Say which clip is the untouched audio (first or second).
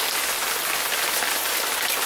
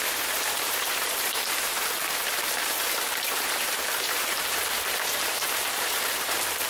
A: first